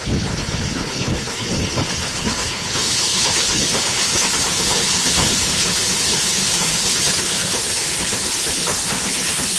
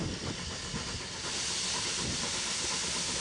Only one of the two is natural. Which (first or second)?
second